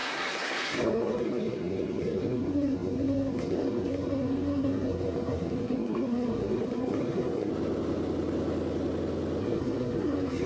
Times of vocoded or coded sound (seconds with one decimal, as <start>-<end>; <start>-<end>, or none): 0.0-7.5; 9.4-10.5

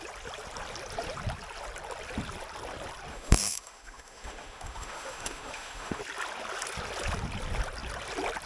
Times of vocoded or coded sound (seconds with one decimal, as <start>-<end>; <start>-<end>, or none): 3.1-6.0

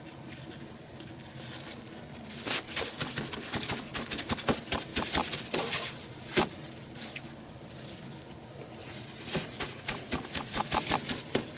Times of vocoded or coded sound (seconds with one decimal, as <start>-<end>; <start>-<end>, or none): 8.8-10.7

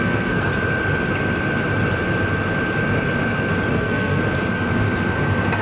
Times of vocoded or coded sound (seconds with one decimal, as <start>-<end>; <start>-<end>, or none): 0.0-0.5; 3.7-4.2